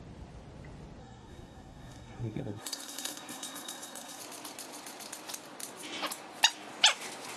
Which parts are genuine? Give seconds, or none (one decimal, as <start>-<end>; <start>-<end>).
0.0-1.0; 4.2-7.4